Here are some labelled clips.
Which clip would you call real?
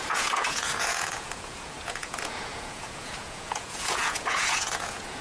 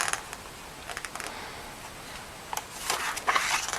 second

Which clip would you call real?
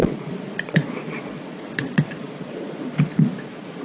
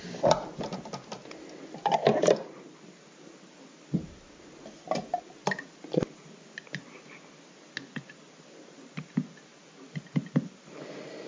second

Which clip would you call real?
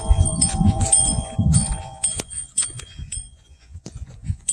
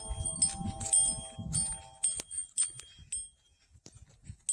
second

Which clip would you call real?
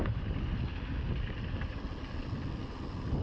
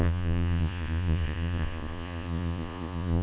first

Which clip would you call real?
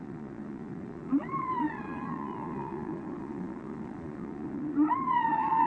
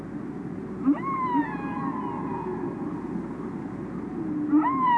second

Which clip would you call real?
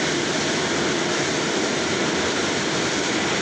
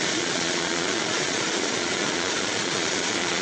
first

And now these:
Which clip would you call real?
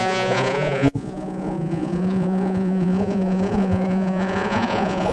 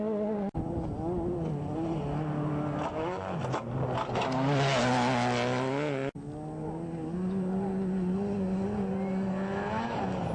second